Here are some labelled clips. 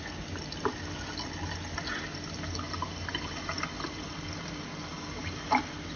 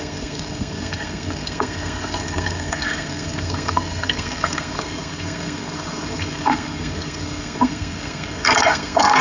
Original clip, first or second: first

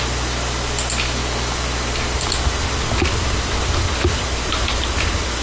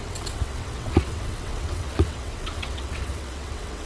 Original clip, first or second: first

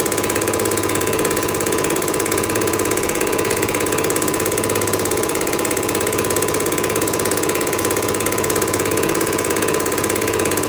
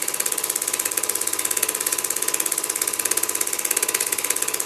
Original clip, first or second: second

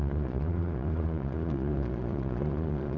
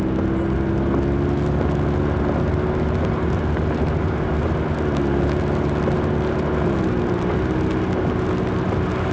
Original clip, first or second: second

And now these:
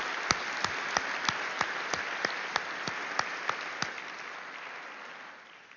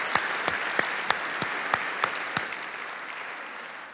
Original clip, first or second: first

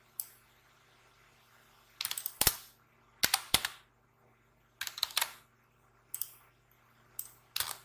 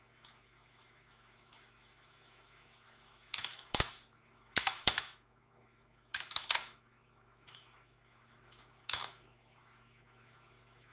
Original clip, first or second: first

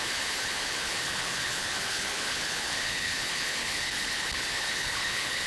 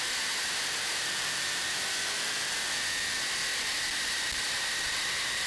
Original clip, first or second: second